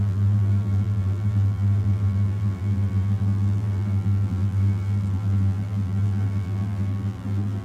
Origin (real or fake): fake